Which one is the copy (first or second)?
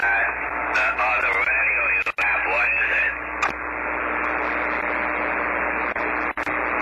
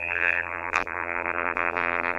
second